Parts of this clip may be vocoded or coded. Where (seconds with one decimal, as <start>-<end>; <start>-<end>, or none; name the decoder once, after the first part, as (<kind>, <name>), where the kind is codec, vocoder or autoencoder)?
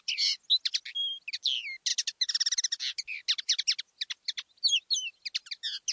none